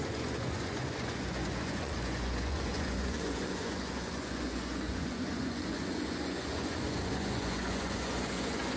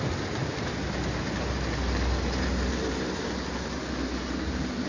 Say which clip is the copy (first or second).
first